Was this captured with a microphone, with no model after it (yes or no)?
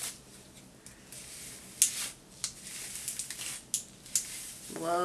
yes